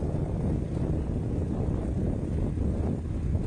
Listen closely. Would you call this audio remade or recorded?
recorded